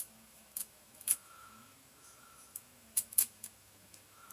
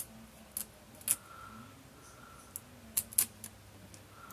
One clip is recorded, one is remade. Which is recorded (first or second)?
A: second